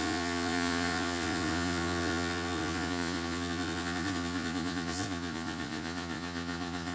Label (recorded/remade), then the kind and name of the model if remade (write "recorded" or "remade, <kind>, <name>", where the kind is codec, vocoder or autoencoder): remade, vocoder, Vocos